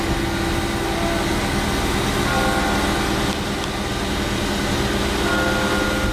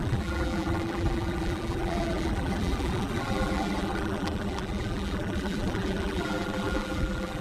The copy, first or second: second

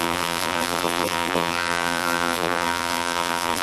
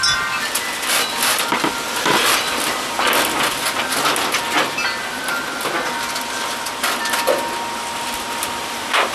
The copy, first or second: first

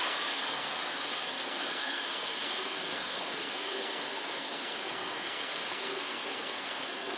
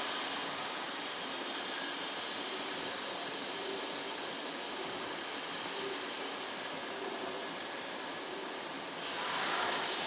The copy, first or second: first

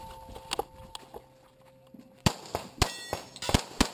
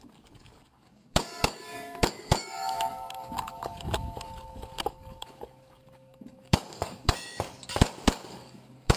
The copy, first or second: second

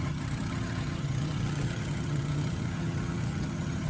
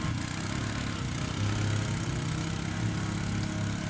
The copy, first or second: first